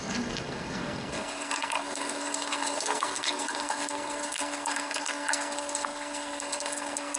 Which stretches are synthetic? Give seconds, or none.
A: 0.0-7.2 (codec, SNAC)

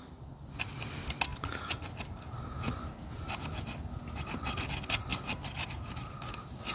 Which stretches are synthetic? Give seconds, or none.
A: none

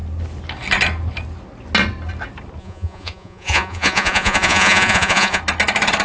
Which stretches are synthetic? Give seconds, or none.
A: 2.6-5.4 (vocoder, Vocos)